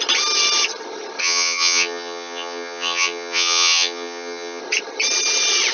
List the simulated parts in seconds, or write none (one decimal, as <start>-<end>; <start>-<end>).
1.2-4.6